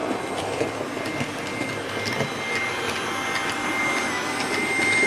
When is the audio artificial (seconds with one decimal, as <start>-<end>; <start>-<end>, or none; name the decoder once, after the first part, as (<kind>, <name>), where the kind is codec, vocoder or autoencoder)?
none